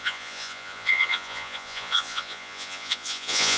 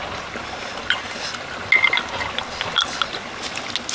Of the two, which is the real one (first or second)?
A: second